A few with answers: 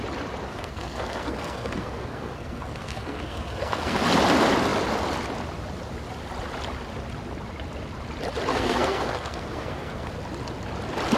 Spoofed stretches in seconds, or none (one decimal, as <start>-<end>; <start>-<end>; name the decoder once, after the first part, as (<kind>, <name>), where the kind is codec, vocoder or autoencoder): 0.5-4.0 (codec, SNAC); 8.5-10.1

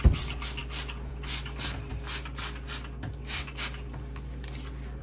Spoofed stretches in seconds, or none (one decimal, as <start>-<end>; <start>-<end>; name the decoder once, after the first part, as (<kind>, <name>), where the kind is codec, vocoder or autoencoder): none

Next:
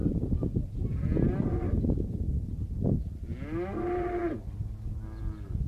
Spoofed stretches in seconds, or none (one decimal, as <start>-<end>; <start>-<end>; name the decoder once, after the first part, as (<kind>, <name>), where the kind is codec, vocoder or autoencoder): none